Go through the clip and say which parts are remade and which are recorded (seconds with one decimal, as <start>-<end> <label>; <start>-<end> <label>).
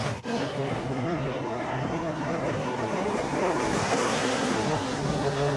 0.0-5.6 remade